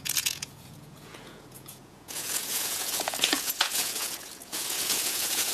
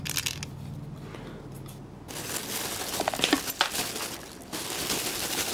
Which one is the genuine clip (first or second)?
second